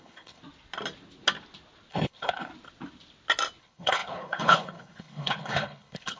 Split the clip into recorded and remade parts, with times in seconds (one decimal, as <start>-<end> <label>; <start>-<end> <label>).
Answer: 0.0-0.4 remade; 0.4-1.9 recorded; 1.9-2.5 remade; 2.5-3.6 recorded; 3.6-6.2 remade